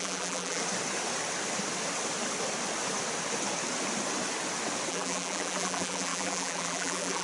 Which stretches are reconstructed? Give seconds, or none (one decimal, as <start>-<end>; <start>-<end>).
0.0-0.6; 4.9-7.2